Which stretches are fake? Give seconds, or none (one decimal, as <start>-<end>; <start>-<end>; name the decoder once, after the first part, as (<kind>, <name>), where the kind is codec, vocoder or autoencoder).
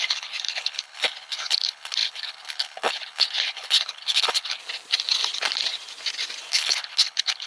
0.0-4.6 (codec, HILCodec); 6.5-7.5